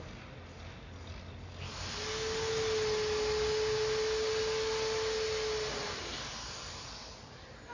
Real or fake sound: real